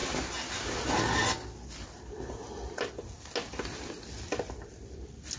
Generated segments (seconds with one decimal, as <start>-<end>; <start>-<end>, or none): none